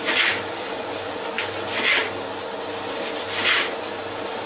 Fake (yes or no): no